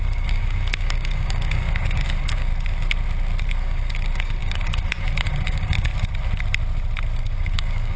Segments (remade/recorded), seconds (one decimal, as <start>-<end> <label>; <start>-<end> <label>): 0.0-2.5 remade; 2.5-3.5 recorded; 3.5-5.9 remade; 5.9-7.2 recorded; 7.2-8.0 remade